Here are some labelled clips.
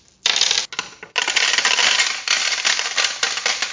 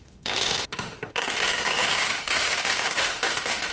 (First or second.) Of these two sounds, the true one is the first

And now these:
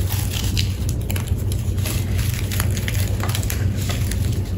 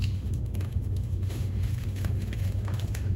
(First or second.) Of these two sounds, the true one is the first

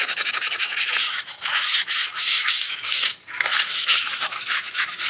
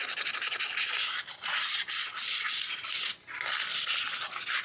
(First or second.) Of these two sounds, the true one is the second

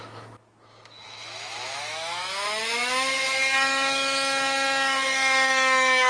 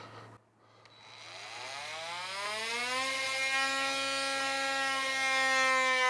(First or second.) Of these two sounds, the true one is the second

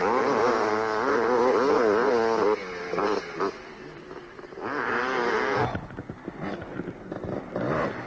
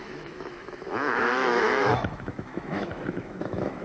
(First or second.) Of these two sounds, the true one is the first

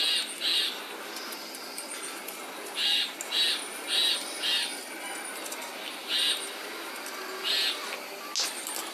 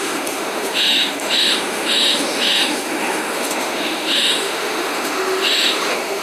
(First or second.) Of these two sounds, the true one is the first